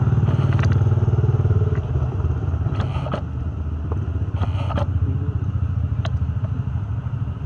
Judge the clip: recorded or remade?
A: recorded